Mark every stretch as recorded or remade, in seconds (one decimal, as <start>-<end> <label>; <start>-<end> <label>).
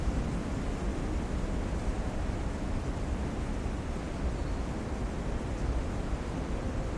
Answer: 0.0-4.4 remade; 4.4-5.1 recorded; 5.1-7.0 remade